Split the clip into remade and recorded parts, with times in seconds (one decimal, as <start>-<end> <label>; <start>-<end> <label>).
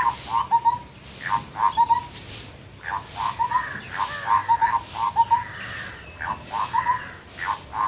0.0-7.9 recorded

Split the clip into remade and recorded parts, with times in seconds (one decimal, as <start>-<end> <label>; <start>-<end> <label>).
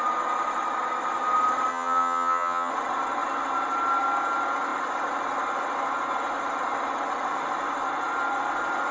0.0-1.7 recorded; 1.7-2.7 remade; 2.7-8.9 recorded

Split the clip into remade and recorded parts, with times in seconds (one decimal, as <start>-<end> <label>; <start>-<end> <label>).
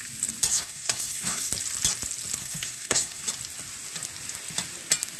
0.0-0.5 recorded; 0.5-1.5 remade; 1.5-2.4 recorded; 2.4-3.2 remade; 3.2-5.2 recorded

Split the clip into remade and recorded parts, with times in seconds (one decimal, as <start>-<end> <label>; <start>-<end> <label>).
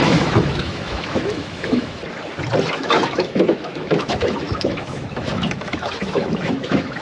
0.0-2.0 remade; 2.0-2.7 recorded; 2.7-7.0 remade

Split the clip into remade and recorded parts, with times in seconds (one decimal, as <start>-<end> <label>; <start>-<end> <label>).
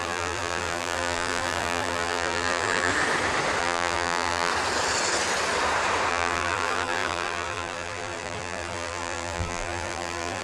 0.0-2.9 remade; 2.9-3.6 recorded; 3.6-4.5 remade; 4.5-6.1 recorded; 6.1-10.4 remade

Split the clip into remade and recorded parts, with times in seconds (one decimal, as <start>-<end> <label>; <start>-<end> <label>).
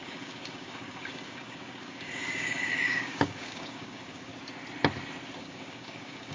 0.0-4.3 remade; 4.3-5.4 recorded; 5.4-6.3 remade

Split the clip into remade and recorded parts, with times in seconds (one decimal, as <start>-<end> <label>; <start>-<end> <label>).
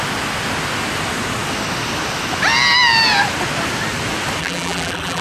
0.0-4.4 recorded; 4.4-5.2 remade